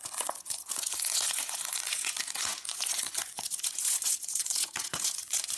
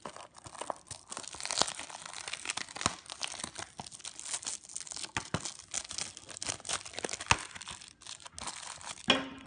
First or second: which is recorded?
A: second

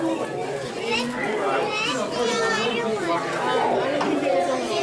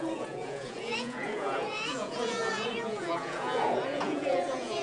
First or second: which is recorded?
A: first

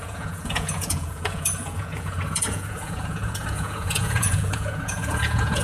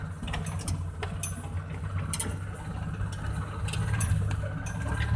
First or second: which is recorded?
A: second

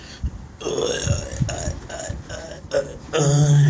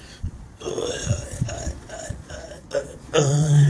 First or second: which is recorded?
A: first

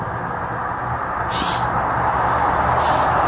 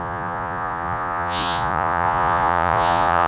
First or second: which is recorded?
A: first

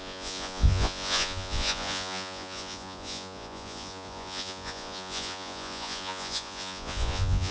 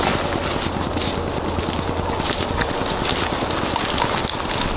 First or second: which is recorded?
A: second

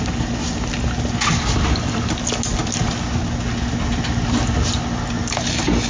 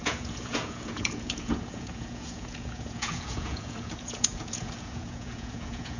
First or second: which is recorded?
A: first